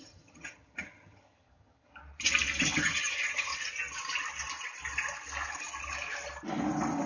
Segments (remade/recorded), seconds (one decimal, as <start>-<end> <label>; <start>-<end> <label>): 0.0-1.9 remade; 1.9-2.6 recorded; 2.6-3.5 remade; 3.5-7.1 recorded

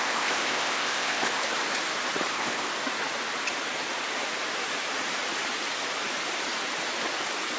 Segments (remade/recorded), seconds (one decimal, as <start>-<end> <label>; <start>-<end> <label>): 0.0-1.5 remade; 1.5-2.3 recorded; 2.3-2.7 remade; 2.7-7.6 recorded

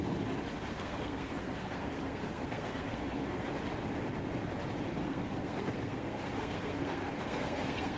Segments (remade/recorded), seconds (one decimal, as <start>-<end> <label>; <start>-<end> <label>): 0.0-0.7 recorded; 0.7-3.5 remade; 3.5-5.0 recorded; 5.0-8.0 remade

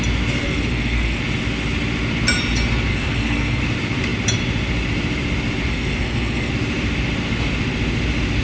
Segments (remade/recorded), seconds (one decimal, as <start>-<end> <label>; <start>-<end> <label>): 0.0-0.4 recorded; 0.4-1.2 remade; 1.2-2.9 recorded; 2.9-3.6 remade; 3.6-5.7 recorded; 5.7-6.5 remade; 6.5-8.4 recorded

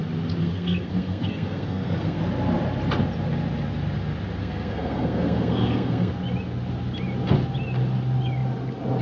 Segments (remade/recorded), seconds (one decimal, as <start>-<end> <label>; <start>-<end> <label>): 0.0-0.4 recorded; 0.4-2.2 remade; 2.2-4.4 recorded; 4.4-6.1 remade; 6.1-9.0 recorded

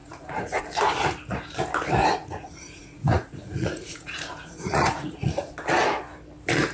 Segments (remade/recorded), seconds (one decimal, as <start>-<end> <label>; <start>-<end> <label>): 0.0-0.6 remade; 0.6-2.0 recorded; 2.0-5.5 remade; 5.5-6.7 recorded

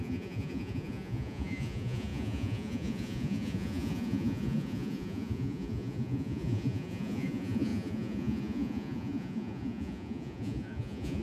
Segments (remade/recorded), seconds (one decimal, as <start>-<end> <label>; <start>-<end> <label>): 0.0-11.2 remade

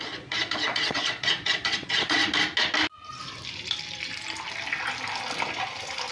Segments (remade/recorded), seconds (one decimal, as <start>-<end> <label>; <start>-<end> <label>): 0.0-2.2 remade; 2.2-6.1 recorded